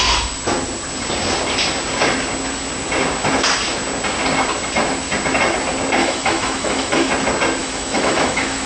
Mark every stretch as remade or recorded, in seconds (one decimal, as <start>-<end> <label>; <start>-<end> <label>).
0.0-6.0 recorded; 6.0-7.1 remade; 7.1-7.6 recorded; 7.6-8.7 remade